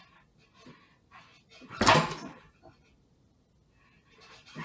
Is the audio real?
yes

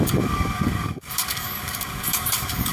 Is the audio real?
no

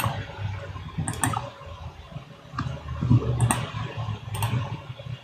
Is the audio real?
yes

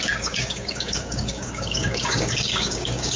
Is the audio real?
no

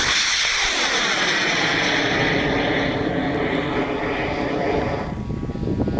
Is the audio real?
yes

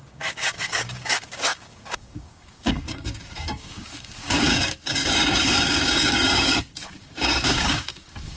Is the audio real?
no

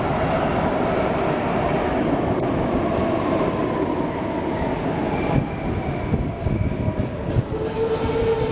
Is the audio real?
yes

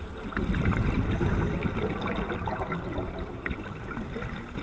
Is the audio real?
yes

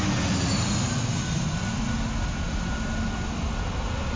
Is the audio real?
yes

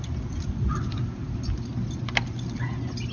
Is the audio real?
yes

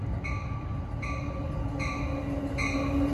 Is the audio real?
yes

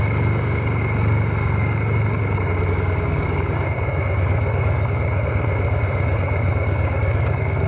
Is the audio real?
no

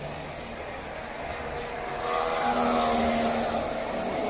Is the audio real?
yes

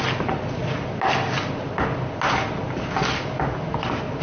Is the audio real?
yes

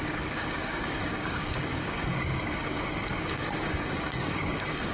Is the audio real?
no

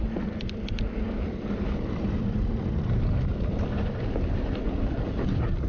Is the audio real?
yes